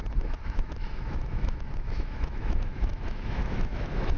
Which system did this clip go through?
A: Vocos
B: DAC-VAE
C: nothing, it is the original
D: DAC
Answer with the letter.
B